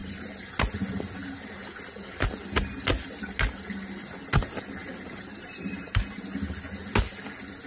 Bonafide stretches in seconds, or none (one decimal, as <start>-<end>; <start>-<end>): 0.5-4.8; 6.2-7.7